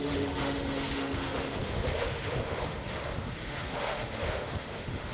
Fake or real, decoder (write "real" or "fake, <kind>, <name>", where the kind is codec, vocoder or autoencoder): fake, autoencoder, DAC-VAE